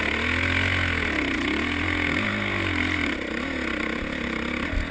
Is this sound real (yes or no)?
yes